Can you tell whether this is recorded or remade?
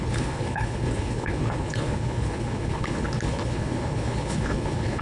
remade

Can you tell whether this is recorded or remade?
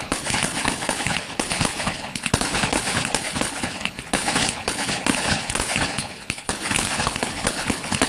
remade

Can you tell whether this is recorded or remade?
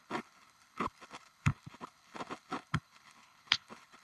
remade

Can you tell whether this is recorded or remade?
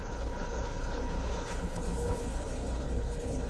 remade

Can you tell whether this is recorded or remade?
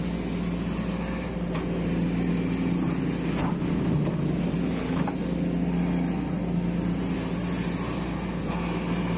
recorded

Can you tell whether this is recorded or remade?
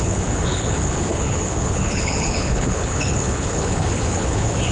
remade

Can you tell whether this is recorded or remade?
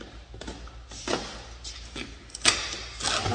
recorded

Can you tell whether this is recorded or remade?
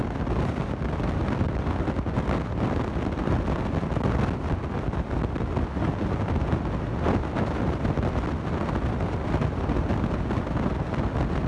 recorded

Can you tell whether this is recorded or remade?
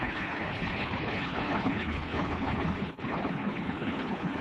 remade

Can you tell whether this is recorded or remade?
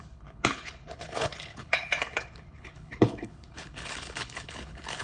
remade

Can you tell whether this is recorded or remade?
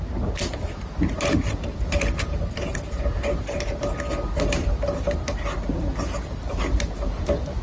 recorded